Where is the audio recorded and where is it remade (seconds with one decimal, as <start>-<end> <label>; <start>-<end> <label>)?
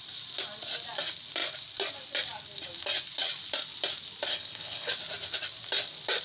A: 0.0-4.3 recorded; 4.3-4.9 remade; 4.9-6.2 recorded